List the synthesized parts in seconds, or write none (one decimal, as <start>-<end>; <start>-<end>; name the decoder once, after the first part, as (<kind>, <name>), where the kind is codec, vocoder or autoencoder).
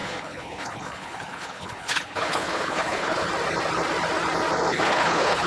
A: 0.0-3.3 (codec, HILCodec); 4.7-5.5